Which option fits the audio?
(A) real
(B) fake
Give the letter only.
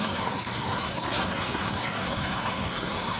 B